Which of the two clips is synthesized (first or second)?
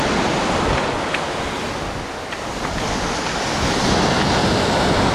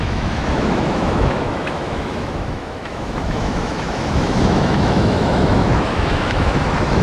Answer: second